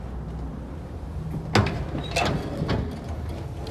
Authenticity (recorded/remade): recorded